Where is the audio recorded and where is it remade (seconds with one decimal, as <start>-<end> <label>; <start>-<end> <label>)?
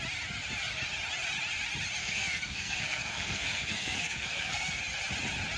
0.0-2.0 recorded; 2.0-4.8 remade; 4.8-5.6 recorded